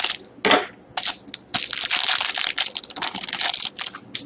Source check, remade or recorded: recorded